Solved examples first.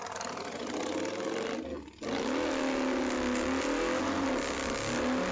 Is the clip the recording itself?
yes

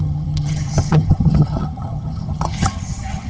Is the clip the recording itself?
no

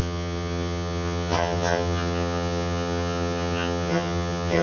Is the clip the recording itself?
no